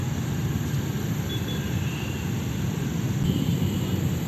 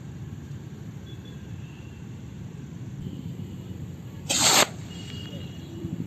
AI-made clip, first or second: second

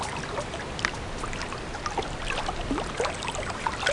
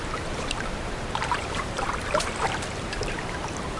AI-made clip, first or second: second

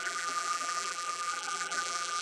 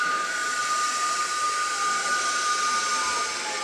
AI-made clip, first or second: first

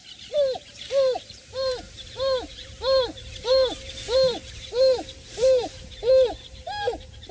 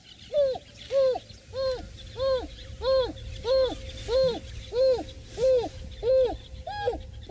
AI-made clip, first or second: first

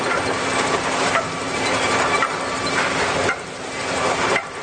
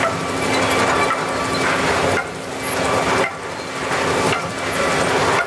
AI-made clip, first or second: first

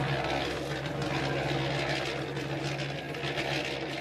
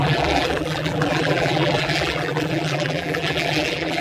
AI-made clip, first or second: second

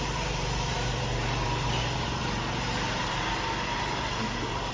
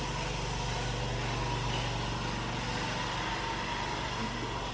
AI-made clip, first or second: first